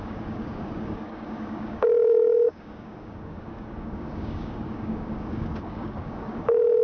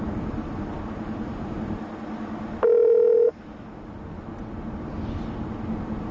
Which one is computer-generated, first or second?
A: first